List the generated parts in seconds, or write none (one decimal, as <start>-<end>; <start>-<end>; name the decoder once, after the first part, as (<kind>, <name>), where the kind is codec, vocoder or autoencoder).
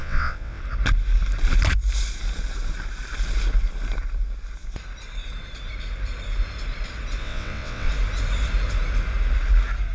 0.0-0.6 (vocoder, WaveNeXt); 7.2-7.9